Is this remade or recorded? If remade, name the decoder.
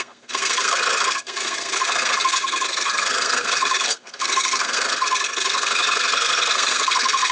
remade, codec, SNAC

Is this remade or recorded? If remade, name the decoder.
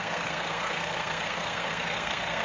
remade, codec, SNAC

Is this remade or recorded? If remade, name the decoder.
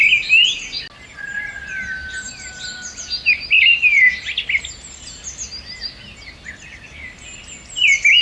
recorded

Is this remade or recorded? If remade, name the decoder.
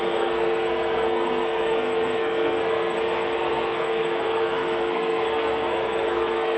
remade, codec, SNAC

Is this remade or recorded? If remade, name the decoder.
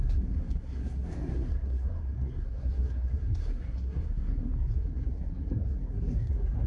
remade, codec, SNAC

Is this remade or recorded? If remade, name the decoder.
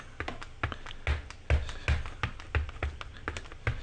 recorded